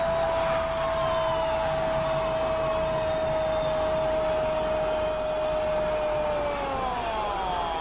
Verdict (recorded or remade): recorded